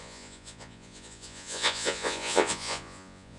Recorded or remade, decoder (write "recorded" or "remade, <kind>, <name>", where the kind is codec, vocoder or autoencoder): remade, vocoder, Vocos